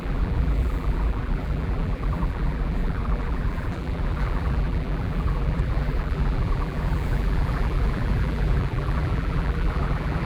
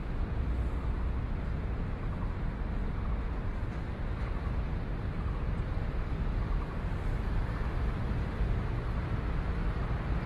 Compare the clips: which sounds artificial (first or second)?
first